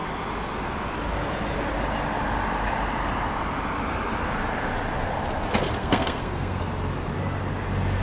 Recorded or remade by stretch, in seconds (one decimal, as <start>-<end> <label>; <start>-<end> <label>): 0.0-5.8 recorded; 5.8-6.6 remade; 6.6-8.0 recorded